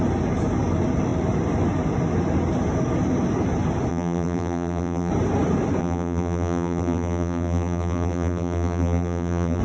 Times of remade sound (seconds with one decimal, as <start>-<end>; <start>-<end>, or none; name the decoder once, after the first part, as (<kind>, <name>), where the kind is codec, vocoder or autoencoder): 3.9-5.1 (vocoder, BigVGAN v2); 5.8-9.6